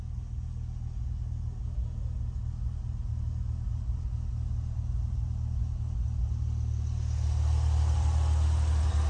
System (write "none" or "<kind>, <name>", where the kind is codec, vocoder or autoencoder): none